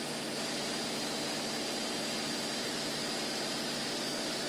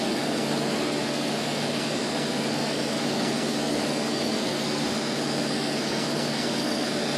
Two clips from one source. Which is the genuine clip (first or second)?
first